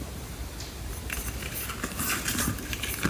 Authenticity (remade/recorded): recorded